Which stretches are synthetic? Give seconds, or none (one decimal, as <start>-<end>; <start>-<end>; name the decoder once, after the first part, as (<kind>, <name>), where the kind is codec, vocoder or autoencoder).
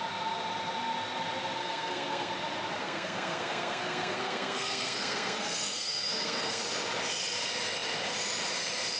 1.6-2.3 (codec, SNAC); 2.8-6.6